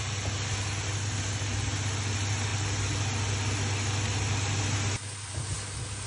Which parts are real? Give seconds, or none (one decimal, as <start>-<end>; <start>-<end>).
0.0-6.1